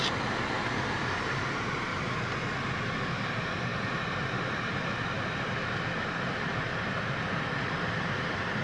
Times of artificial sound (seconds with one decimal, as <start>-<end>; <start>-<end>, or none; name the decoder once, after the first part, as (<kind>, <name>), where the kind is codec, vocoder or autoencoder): 0.0-1.9 (vocoder, BigVGAN v2); 2.9-8.6